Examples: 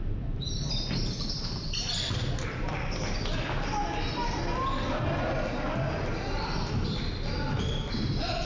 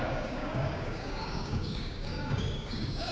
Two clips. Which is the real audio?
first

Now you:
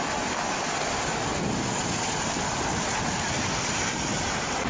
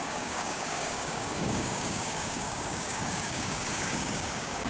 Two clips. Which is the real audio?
first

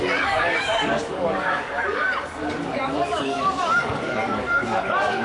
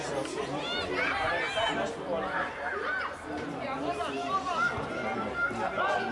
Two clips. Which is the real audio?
second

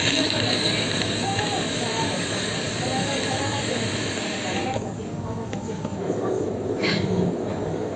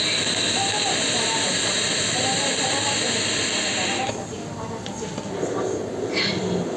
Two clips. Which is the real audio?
second